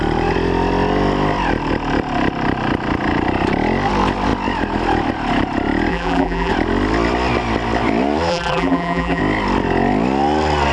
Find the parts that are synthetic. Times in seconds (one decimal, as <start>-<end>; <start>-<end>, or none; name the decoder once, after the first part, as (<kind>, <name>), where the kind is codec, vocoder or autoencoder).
5.9-6.5 (vocoder, BigVGAN v2); 8.3-9.2